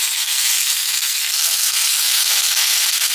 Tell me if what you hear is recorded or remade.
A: remade